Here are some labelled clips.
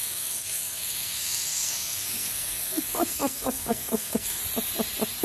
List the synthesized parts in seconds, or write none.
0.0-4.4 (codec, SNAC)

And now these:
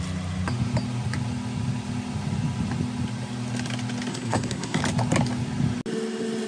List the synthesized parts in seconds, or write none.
4.1-4.8 (codec, SNAC)

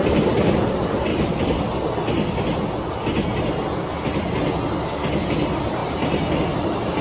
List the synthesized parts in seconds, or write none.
0.0-1.1 (vocoder, BigVGAN v2); 5.3-7.0

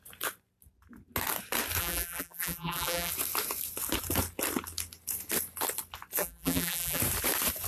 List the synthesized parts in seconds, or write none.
1.8-3.1 (vocoder, BigVGAN v2); 6.2-7.0